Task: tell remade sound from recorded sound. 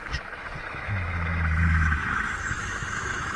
remade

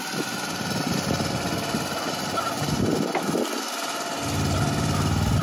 recorded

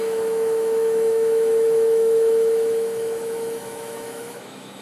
remade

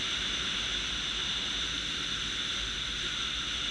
recorded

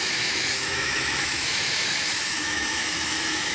remade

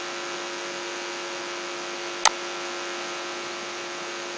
recorded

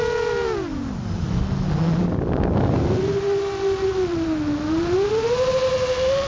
recorded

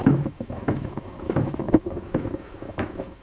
remade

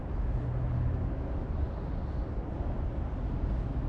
recorded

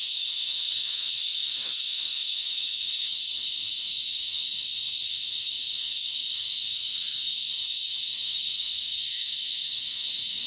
remade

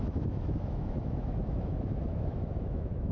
remade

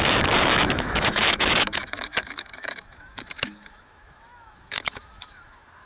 remade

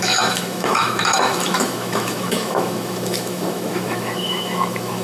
remade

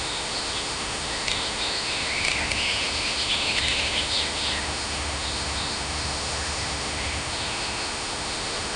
remade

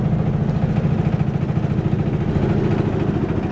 recorded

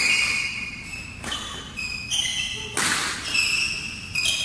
recorded